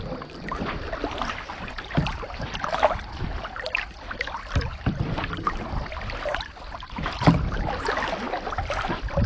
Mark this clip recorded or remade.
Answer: recorded